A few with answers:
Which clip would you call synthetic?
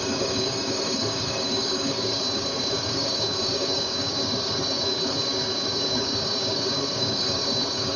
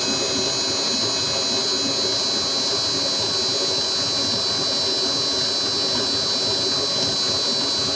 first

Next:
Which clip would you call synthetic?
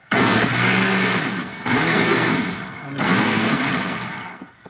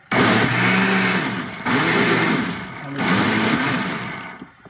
first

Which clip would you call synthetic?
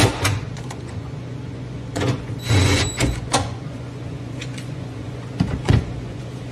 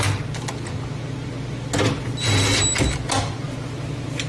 first